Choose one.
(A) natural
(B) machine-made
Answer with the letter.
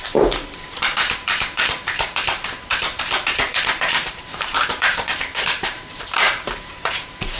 B